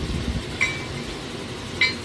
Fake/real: real